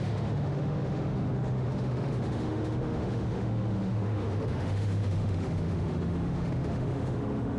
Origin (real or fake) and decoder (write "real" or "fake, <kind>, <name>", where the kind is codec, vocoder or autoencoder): fake, autoencoder, DAC-VAE